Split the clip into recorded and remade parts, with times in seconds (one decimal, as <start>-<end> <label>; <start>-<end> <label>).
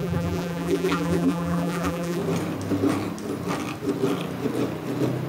0.0-2.2 remade; 2.2-5.3 recorded